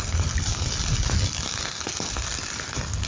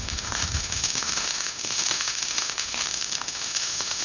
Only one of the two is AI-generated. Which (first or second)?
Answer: second